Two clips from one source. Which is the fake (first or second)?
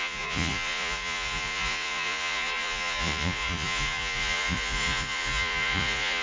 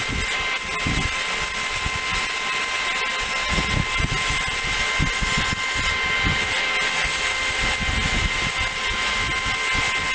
first